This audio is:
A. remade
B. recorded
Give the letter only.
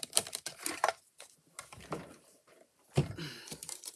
A